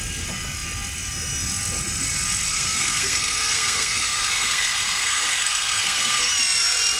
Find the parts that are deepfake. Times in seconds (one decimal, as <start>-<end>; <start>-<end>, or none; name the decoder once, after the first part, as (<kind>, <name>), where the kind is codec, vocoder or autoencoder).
2.5-6.3 (codec, SNAC)